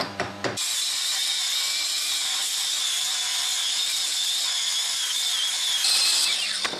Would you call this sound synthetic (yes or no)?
yes